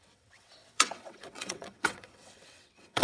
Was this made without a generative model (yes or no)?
no